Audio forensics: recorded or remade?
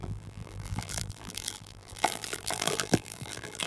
remade